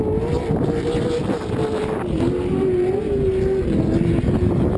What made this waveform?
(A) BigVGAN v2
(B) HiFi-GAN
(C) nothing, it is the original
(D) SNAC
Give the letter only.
C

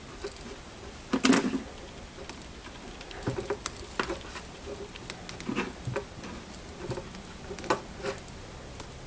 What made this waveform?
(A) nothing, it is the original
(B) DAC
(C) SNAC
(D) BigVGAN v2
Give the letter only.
A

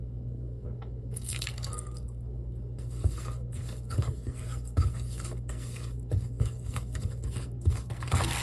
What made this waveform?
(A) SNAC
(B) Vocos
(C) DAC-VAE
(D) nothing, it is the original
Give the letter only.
A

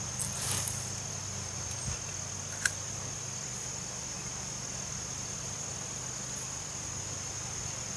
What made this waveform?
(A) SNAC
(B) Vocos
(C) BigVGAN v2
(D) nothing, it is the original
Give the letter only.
D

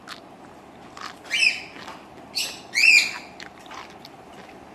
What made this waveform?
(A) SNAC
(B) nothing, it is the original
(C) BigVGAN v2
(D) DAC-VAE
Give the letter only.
B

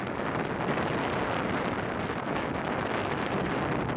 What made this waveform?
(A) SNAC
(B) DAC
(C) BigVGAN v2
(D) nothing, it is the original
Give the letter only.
D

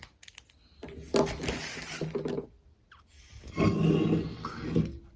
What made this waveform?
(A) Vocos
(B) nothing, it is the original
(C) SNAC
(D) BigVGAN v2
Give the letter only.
B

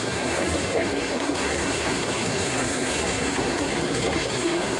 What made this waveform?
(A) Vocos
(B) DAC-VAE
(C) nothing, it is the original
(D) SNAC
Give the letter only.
D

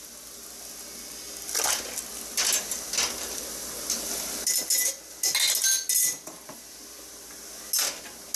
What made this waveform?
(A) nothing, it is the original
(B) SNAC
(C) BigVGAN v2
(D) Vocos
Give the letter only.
A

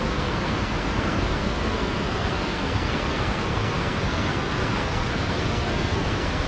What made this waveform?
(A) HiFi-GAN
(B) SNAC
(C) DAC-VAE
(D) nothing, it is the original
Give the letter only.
B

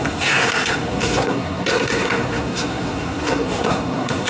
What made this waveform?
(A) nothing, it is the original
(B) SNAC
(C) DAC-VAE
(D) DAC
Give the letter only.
B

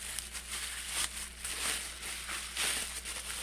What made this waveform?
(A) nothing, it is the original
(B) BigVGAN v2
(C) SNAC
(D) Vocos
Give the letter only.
A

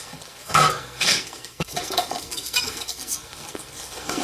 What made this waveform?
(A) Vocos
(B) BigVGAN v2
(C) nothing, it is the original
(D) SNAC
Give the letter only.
D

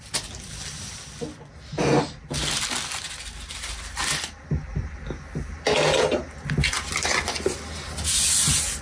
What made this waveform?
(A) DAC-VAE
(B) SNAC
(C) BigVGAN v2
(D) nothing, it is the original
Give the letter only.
D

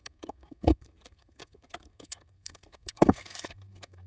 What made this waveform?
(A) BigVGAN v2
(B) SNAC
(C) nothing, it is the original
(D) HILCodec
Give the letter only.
B